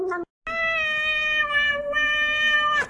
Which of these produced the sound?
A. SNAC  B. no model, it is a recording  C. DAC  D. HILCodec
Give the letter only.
B